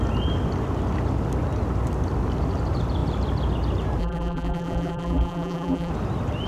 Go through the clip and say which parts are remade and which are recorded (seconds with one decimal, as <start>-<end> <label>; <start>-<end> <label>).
0.0-4.0 recorded; 4.0-5.9 remade; 5.9-6.5 recorded